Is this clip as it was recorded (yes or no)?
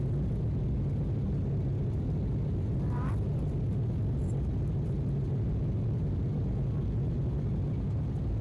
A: yes